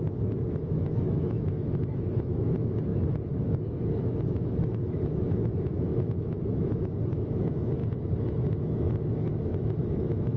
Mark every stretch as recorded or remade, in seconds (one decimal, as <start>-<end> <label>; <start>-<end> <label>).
0.0-7.8 remade; 7.8-8.5 recorded; 8.5-10.4 remade